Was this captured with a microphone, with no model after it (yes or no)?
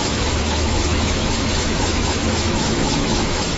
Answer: no